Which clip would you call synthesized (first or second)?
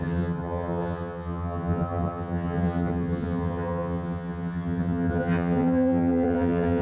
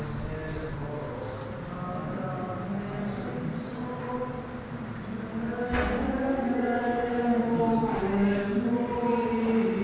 first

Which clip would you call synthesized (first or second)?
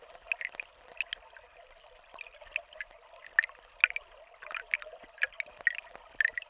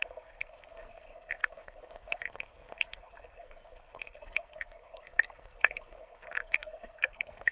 second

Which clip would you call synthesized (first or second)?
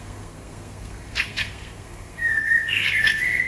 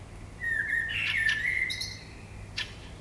first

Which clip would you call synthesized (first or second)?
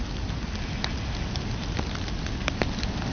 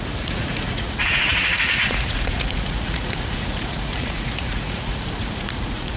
second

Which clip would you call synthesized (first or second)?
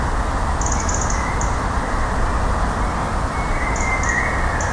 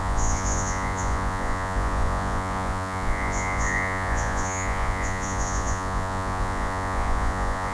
second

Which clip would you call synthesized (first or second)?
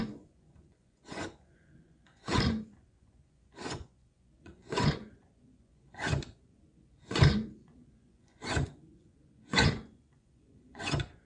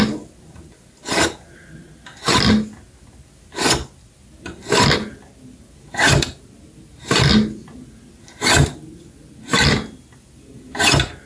first